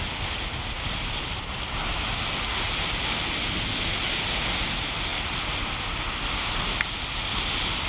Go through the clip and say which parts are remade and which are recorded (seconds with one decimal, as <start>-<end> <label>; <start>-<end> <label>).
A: 0.0-7.9 recorded